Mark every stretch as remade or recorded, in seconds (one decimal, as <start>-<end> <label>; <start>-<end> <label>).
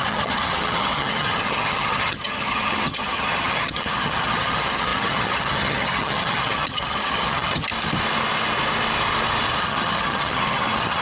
0.0-7.7 remade; 7.7-9.6 recorded; 9.6-11.0 remade